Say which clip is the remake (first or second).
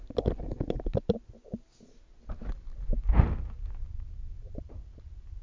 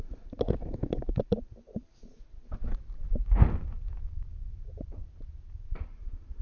second